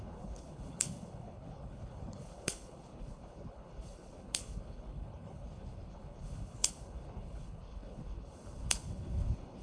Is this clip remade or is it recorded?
remade